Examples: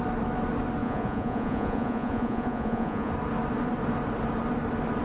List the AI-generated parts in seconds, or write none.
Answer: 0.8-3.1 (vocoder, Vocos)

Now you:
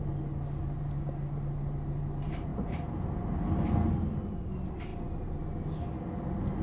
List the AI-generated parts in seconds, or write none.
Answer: none

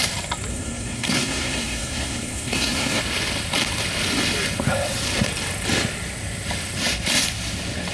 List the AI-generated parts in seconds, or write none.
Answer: 0.5-3.0 (codec, SNAC)

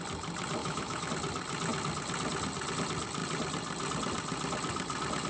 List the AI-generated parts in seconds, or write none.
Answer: 0.6-1.1 (autoencoder, DAC-VAE)

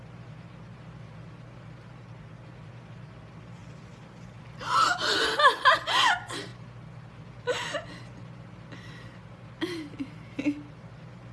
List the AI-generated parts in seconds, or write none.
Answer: none

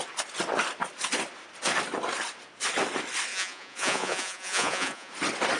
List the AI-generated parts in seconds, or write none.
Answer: 3.3-5.1 (vocoder, Vocos)

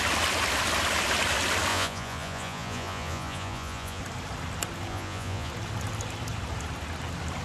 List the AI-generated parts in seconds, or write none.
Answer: 1.7-4.0 (vocoder, Vocos); 4.9-5.5